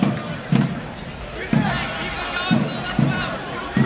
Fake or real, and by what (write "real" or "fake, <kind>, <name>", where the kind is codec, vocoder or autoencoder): real